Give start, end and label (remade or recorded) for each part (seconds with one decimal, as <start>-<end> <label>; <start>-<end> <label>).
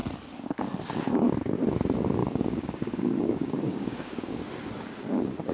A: 0.0-2.2 recorded; 2.2-4.4 remade; 4.4-5.5 recorded